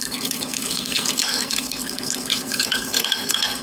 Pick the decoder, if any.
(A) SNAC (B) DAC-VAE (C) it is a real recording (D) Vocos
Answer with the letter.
A